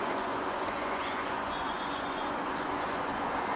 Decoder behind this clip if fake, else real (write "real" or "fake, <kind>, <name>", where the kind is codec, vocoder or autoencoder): fake, vocoder, Vocos